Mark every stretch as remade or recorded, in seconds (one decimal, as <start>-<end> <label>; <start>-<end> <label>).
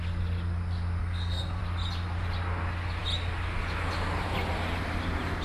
0.0-1.0 recorded; 1.0-1.6 remade; 1.6-5.4 recorded